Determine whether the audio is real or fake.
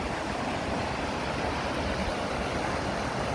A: real